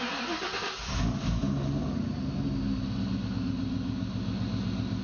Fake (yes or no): no